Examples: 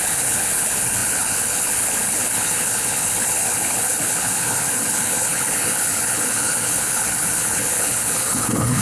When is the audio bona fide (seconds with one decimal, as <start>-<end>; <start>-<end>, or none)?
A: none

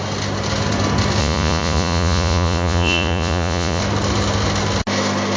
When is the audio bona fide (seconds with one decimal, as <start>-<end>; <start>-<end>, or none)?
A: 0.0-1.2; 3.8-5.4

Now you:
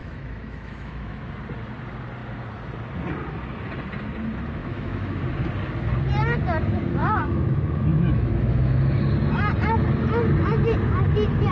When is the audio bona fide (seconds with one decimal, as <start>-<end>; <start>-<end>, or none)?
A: 1.3-4.6; 5.2-7.0; 8.8-11.5

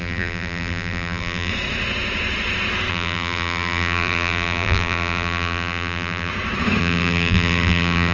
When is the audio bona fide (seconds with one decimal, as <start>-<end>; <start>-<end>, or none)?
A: 1.5-2.9; 6.3-6.8

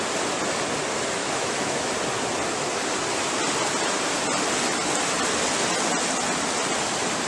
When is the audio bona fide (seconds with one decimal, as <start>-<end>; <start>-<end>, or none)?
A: 0.0-1.2; 1.9-7.3

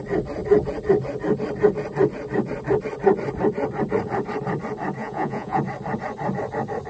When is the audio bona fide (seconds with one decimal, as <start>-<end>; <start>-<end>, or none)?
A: 0.0-5.0; 5.6-6.9

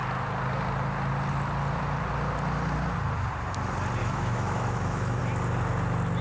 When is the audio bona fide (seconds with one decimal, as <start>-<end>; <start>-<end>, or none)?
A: 0.0-4.0; 5.2-6.2

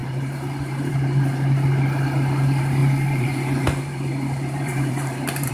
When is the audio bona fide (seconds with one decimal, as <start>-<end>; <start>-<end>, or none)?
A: 0.9-2.8